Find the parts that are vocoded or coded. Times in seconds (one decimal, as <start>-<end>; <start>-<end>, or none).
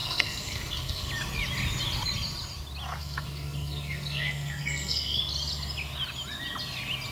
0.0-1.1; 3.0-5.2